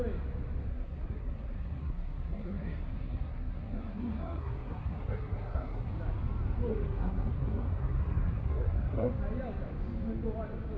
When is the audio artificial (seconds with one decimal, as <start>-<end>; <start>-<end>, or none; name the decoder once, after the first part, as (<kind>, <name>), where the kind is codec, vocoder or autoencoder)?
0.7-5.9 (codec, SNAC); 6.7-9.1